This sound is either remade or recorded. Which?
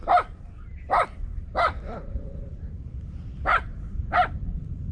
remade